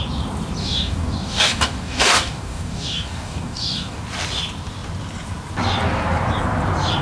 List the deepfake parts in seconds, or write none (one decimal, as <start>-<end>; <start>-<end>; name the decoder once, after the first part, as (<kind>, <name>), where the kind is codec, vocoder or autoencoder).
0.6-4.0 (codec, DAC)